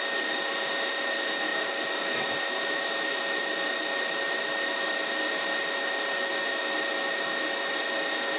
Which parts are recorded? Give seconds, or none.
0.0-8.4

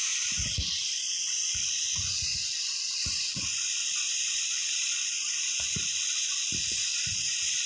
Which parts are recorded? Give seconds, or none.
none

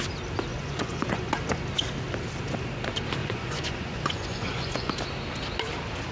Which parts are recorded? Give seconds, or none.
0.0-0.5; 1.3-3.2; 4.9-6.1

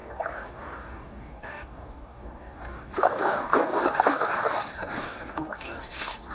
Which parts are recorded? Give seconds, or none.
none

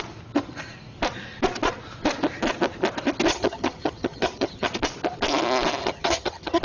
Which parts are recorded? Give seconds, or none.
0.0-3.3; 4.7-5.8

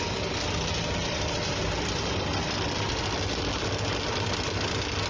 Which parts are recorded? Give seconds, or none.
0.0-1.0; 1.6-5.1

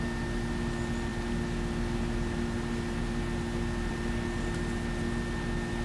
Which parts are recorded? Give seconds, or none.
0.0-5.8

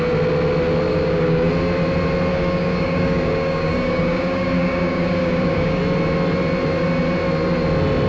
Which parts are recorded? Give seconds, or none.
0.0-0.9; 1.5-2.3; 5.8-8.1